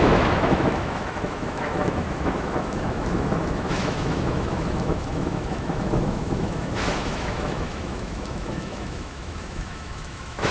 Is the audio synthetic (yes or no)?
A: yes